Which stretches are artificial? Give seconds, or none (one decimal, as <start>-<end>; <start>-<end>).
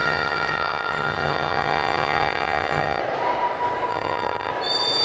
0.0-3.0; 3.9-4.5